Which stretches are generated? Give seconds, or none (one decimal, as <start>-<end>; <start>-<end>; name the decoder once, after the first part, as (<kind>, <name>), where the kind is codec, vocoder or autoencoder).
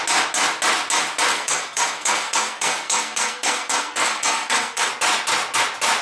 1.3-4.9 (codec, SNAC)